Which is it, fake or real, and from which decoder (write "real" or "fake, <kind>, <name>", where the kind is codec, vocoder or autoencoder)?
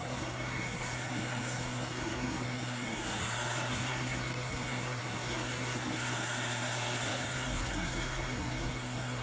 fake, codec, SNAC